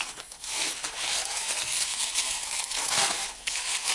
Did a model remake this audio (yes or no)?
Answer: yes